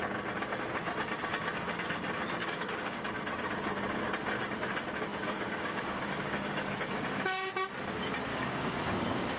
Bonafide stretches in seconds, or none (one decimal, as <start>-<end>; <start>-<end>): 0.0-2.4; 3.1-5.1; 7.5-8.3